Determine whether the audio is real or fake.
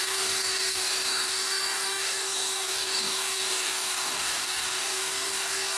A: fake